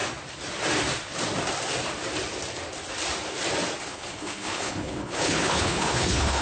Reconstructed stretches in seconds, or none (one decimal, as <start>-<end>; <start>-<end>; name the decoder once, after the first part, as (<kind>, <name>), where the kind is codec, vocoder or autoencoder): 3.8-6.4 (codec, HILCodec)